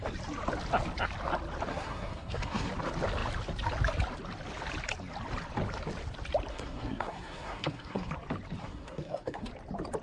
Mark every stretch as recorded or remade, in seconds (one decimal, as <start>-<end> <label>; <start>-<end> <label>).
0.0-1.7 recorded; 1.7-2.7 remade; 2.7-6.5 recorded; 6.5-8.1 remade; 8.1-8.6 recorded; 8.6-9.5 remade; 9.5-10.0 recorded